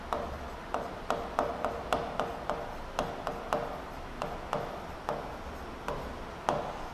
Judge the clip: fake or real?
real